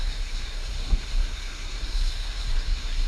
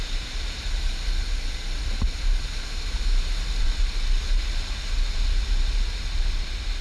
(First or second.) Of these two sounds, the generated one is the first